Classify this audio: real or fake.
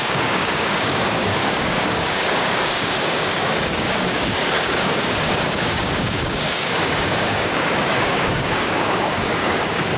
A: fake